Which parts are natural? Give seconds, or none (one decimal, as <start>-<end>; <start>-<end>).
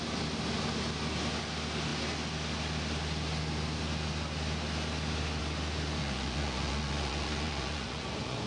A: 0.0-6.0